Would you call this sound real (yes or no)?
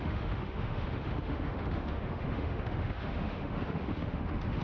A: no